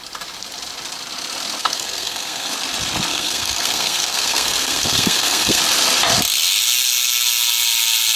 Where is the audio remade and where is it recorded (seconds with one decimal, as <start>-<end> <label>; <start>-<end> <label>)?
0.0-1.6 recorded; 1.6-2.5 remade; 2.5-3.1 recorded; 3.1-5.6 remade; 5.6-8.2 recorded